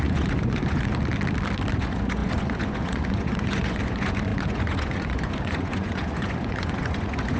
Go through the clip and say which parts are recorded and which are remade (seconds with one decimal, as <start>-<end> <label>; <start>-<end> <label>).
0.0-0.9 remade; 0.9-1.7 recorded; 1.7-7.4 remade